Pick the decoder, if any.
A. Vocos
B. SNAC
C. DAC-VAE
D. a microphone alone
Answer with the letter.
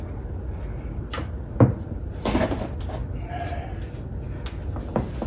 D